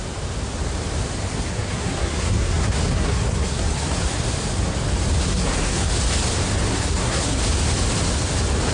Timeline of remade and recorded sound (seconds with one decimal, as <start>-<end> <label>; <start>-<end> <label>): 0.0-1.5 recorded; 1.5-4.0 remade; 4.0-5.2 recorded; 5.2-5.9 remade; 5.9-6.7 recorded; 6.7-7.4 remade; 7.4-8.7 recorded